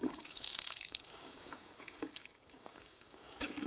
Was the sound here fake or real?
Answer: fake